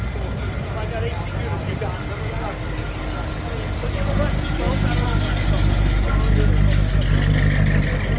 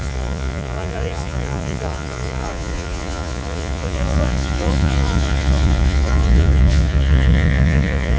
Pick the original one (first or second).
first